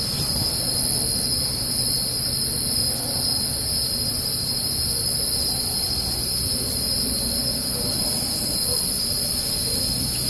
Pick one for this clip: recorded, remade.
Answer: recorded